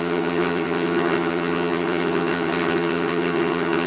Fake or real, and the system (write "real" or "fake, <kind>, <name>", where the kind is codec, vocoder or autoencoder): fake, vocoder, HiFi-GAN